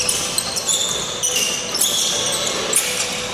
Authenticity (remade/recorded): recorded